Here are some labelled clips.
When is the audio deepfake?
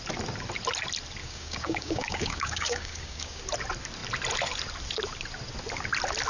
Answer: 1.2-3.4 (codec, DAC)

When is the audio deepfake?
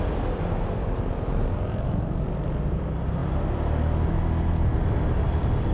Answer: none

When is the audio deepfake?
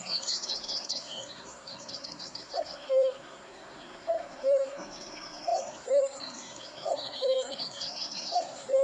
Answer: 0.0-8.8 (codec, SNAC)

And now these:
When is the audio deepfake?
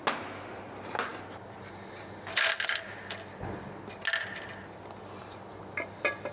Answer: none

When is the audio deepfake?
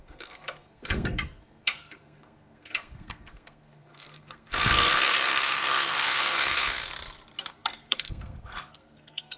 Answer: 0.0-6.9 (codec, SNAC); 7.4-9.4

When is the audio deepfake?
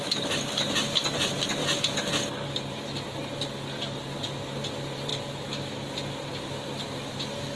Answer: none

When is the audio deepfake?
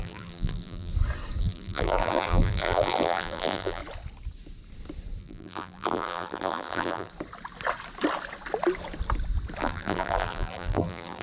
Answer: 0.0-0.9 (vocoder, BigVGAN v2); 1.4-3.8; 5.2-7.1; 9.6-11.2